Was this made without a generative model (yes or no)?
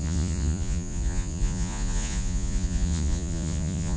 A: no